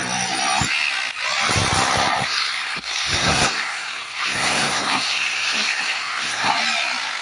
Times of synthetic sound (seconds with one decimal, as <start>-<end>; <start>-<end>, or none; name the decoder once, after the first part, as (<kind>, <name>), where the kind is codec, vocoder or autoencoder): 2.2-6.5 (codec, SNAC)